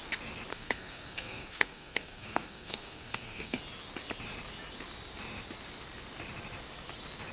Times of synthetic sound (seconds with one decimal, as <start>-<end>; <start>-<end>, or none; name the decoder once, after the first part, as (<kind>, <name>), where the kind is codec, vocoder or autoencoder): 0.5-3.6 (codec, SNAC)